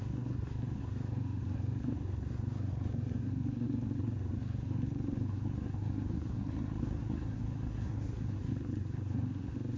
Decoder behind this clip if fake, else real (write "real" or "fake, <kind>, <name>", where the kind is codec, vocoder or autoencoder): fake, codec, SNAC